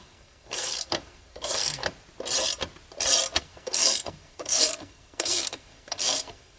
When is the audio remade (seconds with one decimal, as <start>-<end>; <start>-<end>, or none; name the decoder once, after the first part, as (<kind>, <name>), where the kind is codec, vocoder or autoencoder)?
0.0-1.8 (codec, SNAC); 3.4-6.6